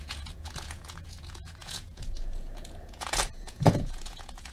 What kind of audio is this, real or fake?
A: fake